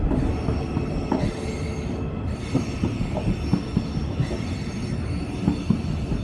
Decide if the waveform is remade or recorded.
recorded